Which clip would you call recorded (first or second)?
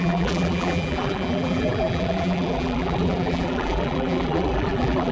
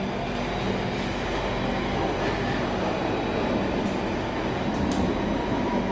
second